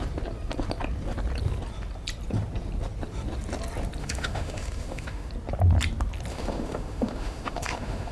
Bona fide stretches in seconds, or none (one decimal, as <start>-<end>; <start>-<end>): 0.0-4.0; 5.3-6.3